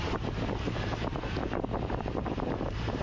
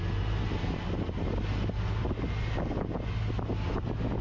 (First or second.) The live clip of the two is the second